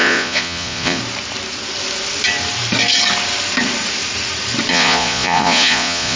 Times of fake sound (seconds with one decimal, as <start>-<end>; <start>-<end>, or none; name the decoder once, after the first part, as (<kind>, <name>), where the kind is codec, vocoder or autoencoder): 0.0-1.0 (vocoder, Vocos); 4.7-6.2